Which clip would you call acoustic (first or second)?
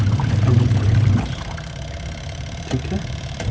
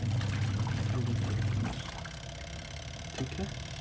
second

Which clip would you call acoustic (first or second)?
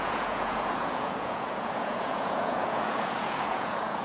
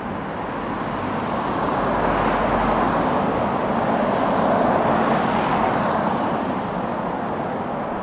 second